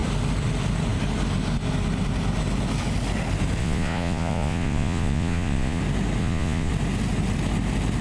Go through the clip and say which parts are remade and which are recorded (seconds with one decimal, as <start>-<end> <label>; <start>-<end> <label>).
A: 0.0-3.6 recorded; 3.6-5.8 remade; 5.8-6.2 recorded; 6.2-6.7 remade; 6.7-8.0 recorded